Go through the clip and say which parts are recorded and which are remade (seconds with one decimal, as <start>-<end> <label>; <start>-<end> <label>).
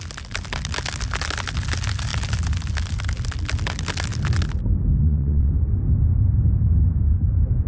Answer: 0.0-5.0 recorded; 5.0-5.5 remade; 5.5-7.7 recorded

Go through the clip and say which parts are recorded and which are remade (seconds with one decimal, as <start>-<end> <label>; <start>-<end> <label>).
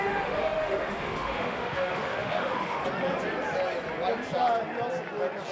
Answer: 0.0-2.8 remade; 2.8-5.5 recorded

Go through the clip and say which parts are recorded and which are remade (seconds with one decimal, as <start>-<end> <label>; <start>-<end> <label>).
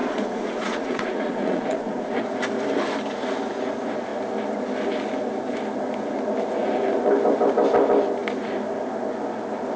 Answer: 0.0-2.2 remade; 2.2-9.8 recorded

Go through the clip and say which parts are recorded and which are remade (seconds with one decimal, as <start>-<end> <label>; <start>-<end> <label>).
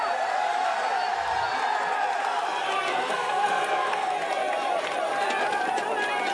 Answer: 0.0-2.9 recorded; 2.9-4.1 remade; 4.1-6.3 recorded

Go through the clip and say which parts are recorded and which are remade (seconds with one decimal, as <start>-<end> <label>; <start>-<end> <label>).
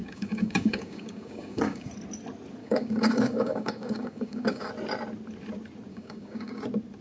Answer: 0.0-1.9 remade; 1.9-2.6 recorded; 2.6-4.7 remade; 4.7-5.9 recorded; 5.9-6.6 remade; 6.6-7.0 recorded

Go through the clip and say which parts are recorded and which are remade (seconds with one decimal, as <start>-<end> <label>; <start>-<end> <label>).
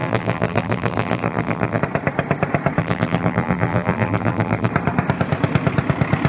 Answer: 0.0-1.8 remade; 1.8-2.8 recorded; 2.8-4.7 remade; 4.7-6.3 recorded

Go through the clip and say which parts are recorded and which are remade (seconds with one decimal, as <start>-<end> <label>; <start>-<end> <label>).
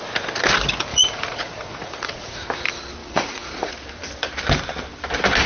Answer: 0.0-0.9 recorded; 0.9-2.5 remade; 2.5-3.0 recorded; 3.0-3.7 remade; 3.7-5.5 recorded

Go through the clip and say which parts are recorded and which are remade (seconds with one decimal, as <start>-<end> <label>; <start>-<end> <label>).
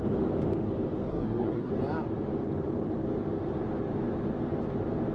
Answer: 0.0-1.1 recorded; 1.1-1.7 remade; 1.7-5.1 recorded